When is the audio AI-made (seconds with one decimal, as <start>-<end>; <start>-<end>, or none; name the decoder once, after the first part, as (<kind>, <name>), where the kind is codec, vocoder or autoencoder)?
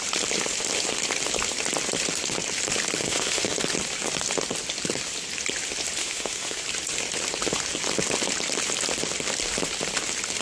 3.0-3.6 (autoencoder, DAC-VAE); 6.0-6.6